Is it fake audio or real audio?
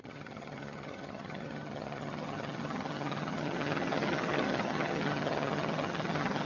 fake